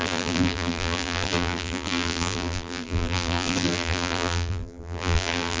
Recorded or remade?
remade